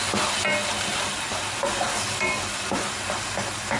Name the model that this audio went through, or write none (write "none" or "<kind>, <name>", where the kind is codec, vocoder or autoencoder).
none